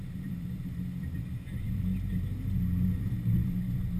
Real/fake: fake